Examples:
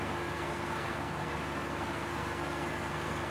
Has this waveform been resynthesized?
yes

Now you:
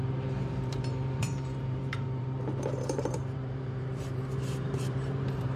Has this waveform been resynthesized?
yes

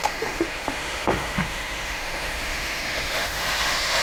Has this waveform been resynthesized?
yes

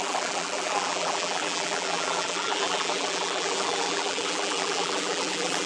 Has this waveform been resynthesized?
yes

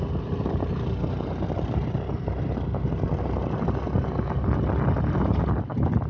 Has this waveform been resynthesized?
no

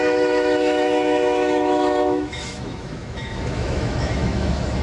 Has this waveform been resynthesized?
yes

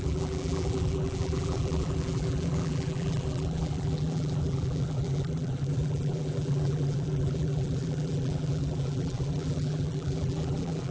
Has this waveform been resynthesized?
yes